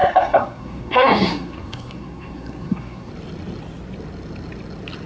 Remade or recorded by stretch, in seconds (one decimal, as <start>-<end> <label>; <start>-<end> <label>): 0.0-3.1 remade; 3.1-5.1 recorded